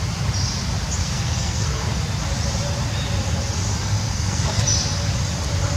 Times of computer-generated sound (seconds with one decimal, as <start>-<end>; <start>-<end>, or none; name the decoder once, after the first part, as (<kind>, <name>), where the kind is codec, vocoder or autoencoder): 1.0-2.0 (codec, SNAC); 3.8-4.6